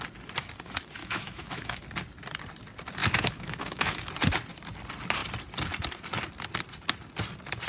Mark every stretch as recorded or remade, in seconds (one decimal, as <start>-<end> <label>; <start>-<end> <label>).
0.0-1.0 recorded; 1.0-1.8 remade; 1.8-3.0 recorded; 3.0-4.0 remade; 4.0-7.7 recorded